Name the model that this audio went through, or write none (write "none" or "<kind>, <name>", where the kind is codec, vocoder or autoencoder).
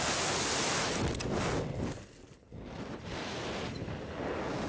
none